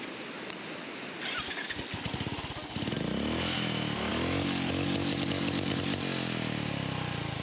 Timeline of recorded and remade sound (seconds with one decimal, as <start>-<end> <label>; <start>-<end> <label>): 0.0-4.1 recorded; 4.1-5.8 remade; 5.8-7.4 recorded

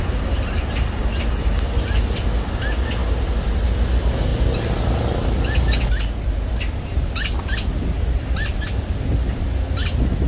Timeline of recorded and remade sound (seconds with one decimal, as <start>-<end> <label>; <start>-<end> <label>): 0.0-3.0 recorded; 3.0-3.7 remade; 3.7-10.3 recorded

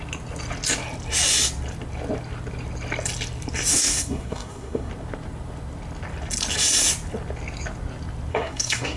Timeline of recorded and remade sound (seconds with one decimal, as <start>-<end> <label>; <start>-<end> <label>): 0.0-3.7 recorded; 3.7-4.9 remade; 4.9-8.3 recorded; 8.3-9.0 remade

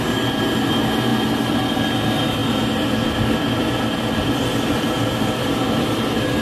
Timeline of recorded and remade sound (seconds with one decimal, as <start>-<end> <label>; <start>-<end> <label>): 0.0-1.1 recorded; 1.1-1.6 remade; 1.6-6.4 recorded

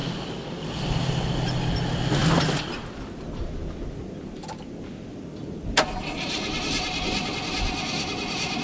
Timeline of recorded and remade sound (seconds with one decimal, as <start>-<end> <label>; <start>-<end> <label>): 0.0-8.6 recorded

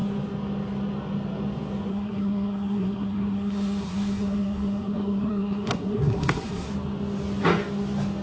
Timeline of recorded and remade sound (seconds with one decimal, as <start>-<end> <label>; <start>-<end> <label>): 0.0-1.9 recorded; 1.9-6.7 remade; 6.7-8.2 recorded

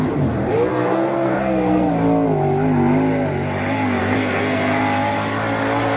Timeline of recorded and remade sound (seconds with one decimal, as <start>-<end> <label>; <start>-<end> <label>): 0.0-0.7 recorded; 0.7-1.9 remade; 1.9-4.0 recorded; 4.0-4.8 remade; 4.8-6.0 recorded